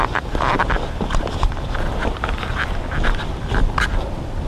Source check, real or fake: real